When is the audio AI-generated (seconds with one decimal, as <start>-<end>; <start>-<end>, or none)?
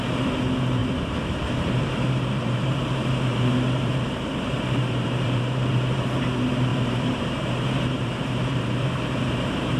0.0-9.8